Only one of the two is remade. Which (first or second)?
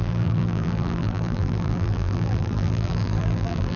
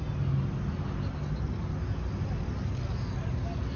first